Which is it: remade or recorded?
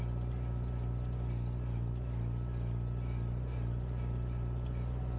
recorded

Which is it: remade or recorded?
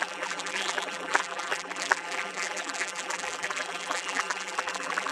remade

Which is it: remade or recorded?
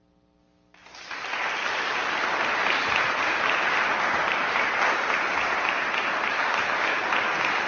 recorded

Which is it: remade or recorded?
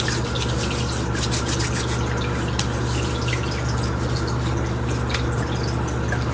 recorded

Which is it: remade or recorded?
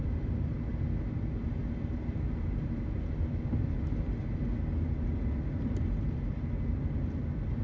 recorded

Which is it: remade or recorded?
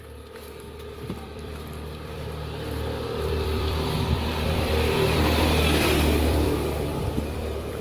remade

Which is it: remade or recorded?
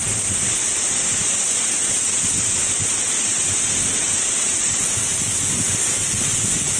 recorded